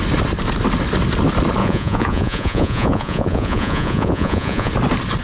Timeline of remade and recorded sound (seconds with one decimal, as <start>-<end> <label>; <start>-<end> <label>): 0.0-1.6 recorded; 1.6-4.7 remade; 4.7-5.2 recorded